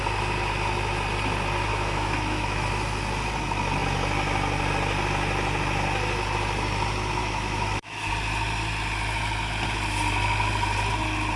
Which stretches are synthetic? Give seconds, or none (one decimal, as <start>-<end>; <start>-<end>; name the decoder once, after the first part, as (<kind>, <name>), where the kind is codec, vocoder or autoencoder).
1.7-2.7 (autoencoder, DAC-VAE); 7.2-8.1